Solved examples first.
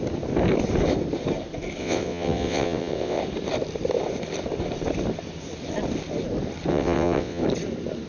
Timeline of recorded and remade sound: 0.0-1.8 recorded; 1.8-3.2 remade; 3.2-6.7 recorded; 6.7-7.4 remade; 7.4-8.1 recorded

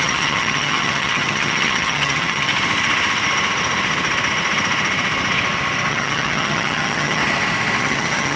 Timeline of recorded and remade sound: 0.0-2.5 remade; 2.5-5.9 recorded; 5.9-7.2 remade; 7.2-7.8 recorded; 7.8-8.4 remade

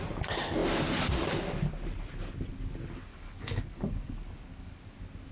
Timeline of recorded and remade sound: 0.0-3.1 recorded; 3.1-4.8 remade; 4.8-5.3 recorded

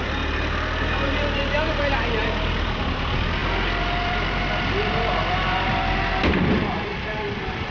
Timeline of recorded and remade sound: 0.0-7.7 remade